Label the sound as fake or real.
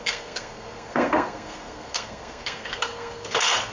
fake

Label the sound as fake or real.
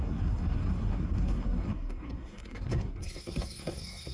fake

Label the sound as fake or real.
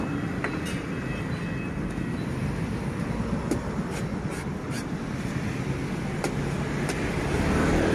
real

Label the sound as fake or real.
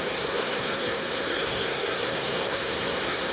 fake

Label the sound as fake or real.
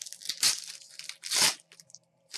real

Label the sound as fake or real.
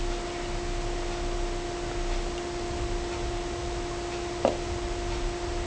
real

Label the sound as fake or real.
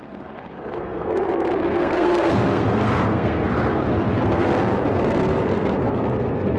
fake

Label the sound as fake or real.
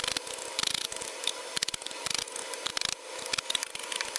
real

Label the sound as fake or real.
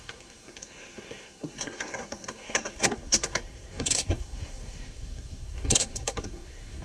fake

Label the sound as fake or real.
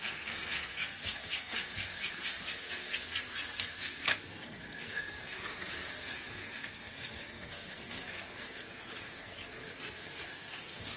fake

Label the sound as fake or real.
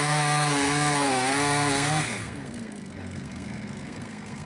fake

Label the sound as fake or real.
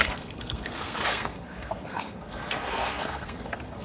fake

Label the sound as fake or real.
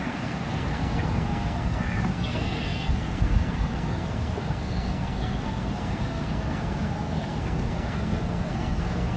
fake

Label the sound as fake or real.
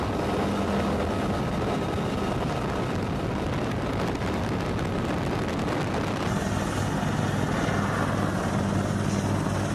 real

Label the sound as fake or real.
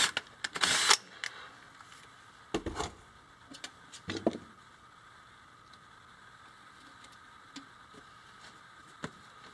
real